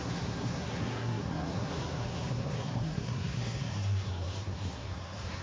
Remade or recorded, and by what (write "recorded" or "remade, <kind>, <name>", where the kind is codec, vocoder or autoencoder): remade, codec, SNAC